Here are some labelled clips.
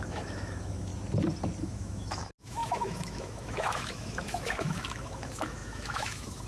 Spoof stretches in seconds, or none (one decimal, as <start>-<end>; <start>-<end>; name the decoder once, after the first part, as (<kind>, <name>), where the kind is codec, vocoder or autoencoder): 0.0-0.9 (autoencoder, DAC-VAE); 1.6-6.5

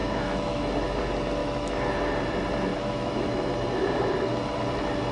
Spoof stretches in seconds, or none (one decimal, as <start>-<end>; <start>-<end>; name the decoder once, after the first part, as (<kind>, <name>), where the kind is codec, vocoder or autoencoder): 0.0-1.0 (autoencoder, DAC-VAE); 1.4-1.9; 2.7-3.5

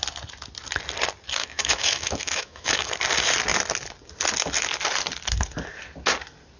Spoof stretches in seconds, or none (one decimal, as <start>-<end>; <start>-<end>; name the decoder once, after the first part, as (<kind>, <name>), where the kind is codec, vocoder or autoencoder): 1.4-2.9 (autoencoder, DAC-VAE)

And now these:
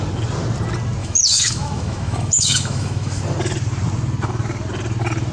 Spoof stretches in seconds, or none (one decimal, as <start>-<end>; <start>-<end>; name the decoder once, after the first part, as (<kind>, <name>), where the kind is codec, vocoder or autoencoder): 1.0-3.2 (autoencoder, DAC-VAE)

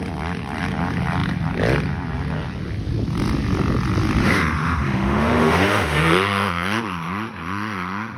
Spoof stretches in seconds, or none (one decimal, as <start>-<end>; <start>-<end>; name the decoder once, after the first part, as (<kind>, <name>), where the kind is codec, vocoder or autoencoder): 4.2-8.2 (autoencoder, DAC-VAE)

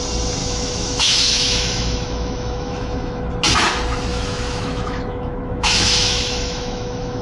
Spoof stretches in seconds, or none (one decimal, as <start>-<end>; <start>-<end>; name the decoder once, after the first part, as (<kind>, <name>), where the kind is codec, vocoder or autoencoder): 0.4-3.3 (autoencoder, DAC-VAE); 4.1-7.2

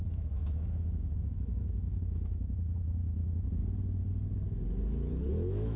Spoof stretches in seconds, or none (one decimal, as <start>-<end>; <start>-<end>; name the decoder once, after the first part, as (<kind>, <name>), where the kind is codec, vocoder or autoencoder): 0.0-3.6 (autoencoder, DAC-VAE); 5.3-5.8

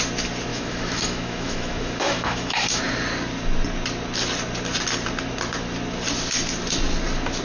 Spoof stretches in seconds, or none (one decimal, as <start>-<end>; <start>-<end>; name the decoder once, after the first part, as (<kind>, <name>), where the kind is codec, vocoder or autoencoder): 0.5-2.8 (autoencoder, DAC-VAE)